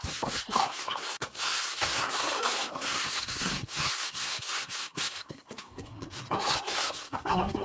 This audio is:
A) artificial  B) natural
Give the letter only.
A